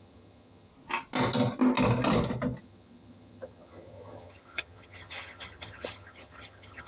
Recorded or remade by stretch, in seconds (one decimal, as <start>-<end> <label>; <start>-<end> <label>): 0.0-0.7 remade; 0.7-2.6 recorded; 2.6-6.9 remade